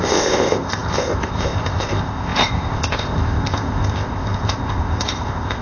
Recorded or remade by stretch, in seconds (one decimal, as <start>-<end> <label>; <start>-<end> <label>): 0.0-5.6 remade